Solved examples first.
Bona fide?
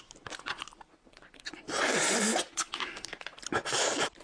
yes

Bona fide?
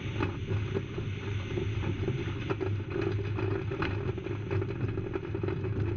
yes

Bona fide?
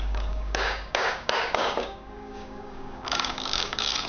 no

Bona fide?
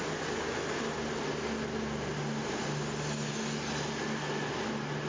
yes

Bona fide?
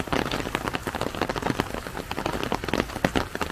yes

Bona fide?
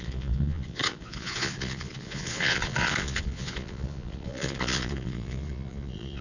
no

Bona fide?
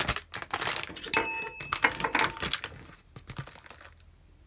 yes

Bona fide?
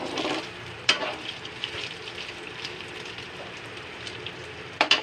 no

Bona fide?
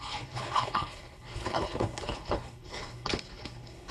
no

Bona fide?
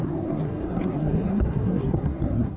no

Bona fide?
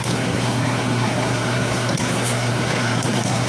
no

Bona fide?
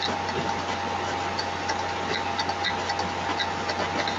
yes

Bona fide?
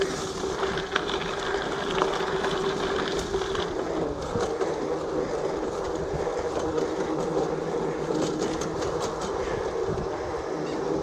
yes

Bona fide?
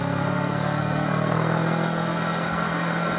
no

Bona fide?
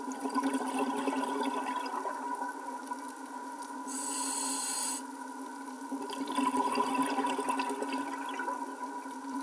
yes